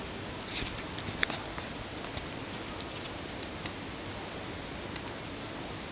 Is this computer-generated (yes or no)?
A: no